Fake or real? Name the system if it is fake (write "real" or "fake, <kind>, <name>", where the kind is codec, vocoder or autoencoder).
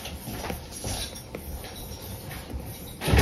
real